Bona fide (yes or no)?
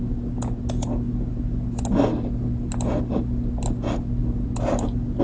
yes